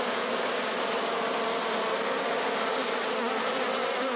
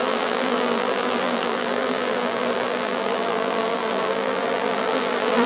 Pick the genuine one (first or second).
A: first